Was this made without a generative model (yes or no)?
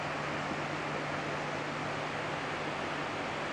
yes